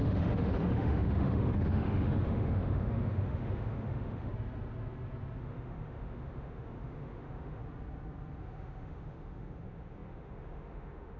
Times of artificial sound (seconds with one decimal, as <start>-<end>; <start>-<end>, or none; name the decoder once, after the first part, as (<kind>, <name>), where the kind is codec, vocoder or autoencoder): 0.0-4.3 (autoencoder, DAC-VAE); 5.4-7.6; 8.4-11.2